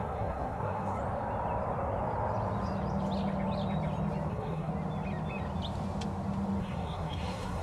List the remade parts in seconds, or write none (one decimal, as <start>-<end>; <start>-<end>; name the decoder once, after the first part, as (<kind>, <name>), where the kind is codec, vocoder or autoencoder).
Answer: 0.0-1.0 (codec, SNAC); 4.3-4.7; 6.6-7.6